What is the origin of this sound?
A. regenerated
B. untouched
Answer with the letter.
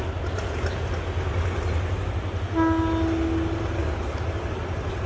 B